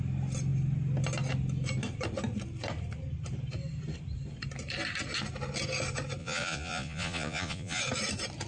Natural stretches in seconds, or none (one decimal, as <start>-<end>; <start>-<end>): 0.0-6.2; 7.8-8.5